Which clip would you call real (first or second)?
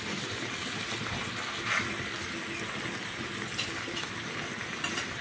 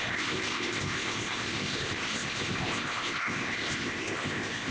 first